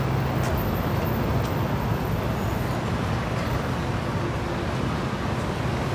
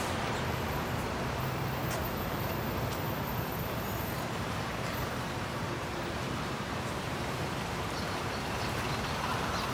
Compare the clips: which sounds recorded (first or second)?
first